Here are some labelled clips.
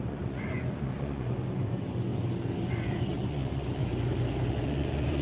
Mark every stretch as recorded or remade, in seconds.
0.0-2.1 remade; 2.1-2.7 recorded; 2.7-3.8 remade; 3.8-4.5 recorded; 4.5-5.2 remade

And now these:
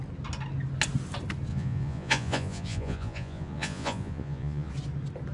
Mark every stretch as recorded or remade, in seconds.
0.0-1.5 recorded; 1.5-4.7 remade; 4.7-5.3 recorded

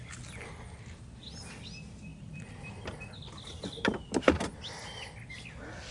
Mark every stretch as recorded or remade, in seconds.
0.0-5.9 recorded

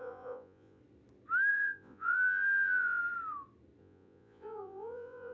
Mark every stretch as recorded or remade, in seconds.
0.0-0.8 remade; 0.8-1.5 recorded; 1.5-3.0 remade; 3.0-3.8 recorded; 3.8-5.3 remade

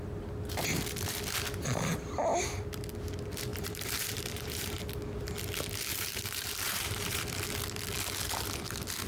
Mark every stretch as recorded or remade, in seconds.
0.0-3.5 recorded; 3.5-4.8 remade; 4.8-5.9 recorded; 5.9-7.2 remade; 7.2-9.1 recorded